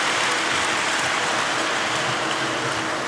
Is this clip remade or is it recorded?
recorded